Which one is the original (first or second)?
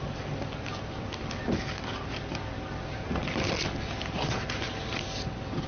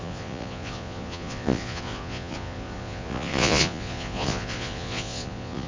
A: first